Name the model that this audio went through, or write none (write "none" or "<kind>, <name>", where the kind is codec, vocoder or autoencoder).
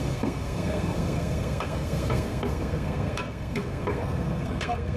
codec, SNAC